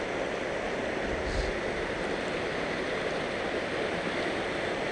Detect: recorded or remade recorded